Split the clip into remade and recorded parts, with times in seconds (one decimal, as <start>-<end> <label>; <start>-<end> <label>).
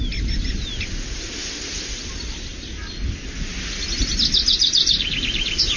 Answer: 0.0-5.8 recorded